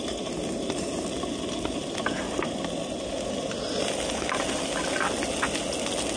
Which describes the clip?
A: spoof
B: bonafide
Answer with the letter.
B